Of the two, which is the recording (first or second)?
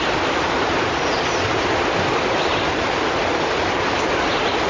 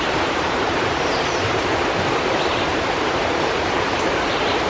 first